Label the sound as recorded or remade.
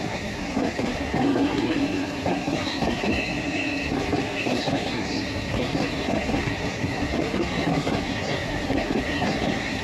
remade